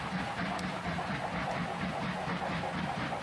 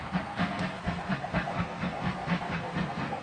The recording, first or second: first